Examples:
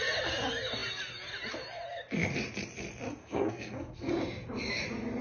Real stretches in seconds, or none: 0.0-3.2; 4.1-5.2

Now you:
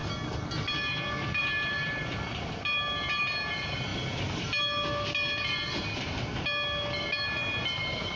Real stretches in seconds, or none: 0.0-8.2

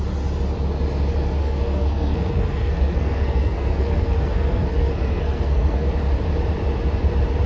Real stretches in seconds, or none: 0.0-1.4; 5.9-7.5